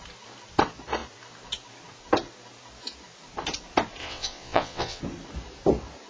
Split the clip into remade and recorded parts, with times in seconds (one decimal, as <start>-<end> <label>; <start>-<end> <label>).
0.0-4.0 recorded; 4.0-5.0 remade; 5.0-6.1 recorded